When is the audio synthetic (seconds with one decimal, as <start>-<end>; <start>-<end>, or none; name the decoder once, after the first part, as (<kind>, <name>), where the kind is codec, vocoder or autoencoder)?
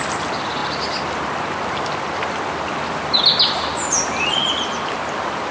none